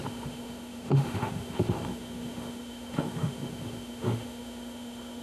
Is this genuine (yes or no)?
no